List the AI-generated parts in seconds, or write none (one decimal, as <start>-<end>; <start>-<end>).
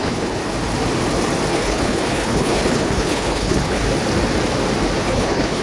0.0-0.4; 1.5-3.8; 5.0-5.6